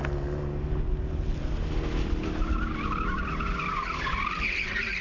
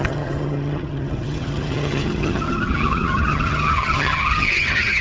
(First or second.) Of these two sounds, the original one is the first